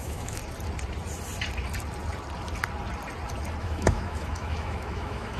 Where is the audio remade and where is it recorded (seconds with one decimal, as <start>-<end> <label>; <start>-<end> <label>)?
0.0-0.4 remade; 0.4-3.6 recorded; 3.6-5.4 remade

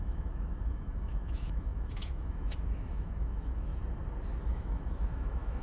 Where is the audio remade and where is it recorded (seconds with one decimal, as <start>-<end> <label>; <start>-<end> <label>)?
0.0-3.7 remade; 3.7-4.5 recorded; 4.5-5.6 remade

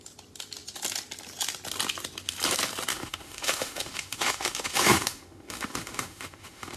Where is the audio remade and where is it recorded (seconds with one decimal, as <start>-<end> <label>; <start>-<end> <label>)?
0.0-2.9 recorded; 2.9-6.8 remade